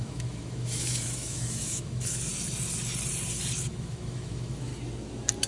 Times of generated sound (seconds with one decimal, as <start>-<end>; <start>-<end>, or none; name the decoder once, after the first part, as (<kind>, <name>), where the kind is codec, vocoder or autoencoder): 0.0-2.3 (autoencoder, DAC-VAE); 3.7-4.7